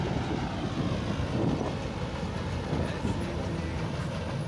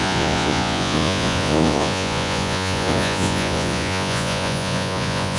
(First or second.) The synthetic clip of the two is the second